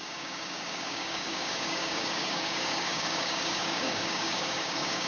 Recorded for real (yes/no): no